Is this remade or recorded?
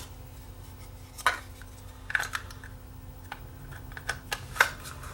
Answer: recorded